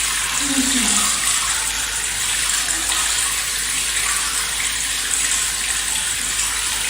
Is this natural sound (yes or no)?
yes